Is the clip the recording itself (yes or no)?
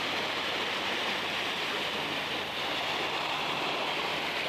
no